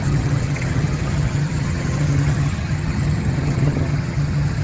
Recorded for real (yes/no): no